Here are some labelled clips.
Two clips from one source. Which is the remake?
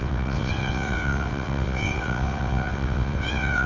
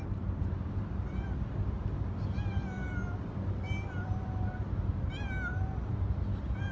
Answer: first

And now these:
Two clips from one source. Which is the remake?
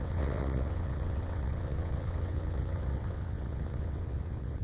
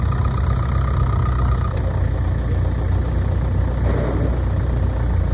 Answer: first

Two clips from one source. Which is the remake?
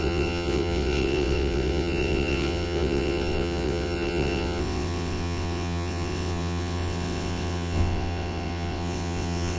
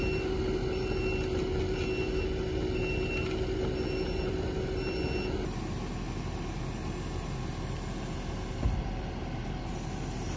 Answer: first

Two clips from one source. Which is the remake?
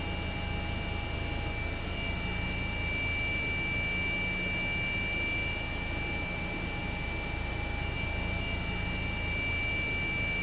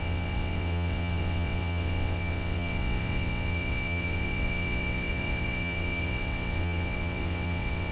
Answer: second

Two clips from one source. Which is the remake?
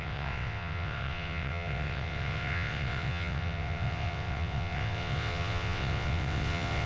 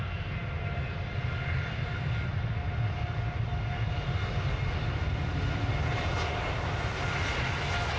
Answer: first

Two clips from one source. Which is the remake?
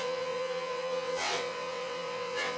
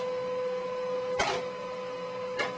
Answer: first